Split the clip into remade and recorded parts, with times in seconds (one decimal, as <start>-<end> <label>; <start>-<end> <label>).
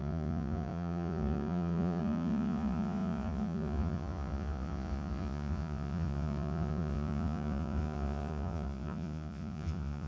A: 0.0-10.1 remade